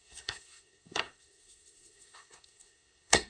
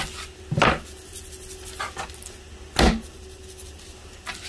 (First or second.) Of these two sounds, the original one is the second